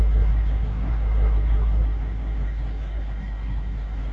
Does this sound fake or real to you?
fake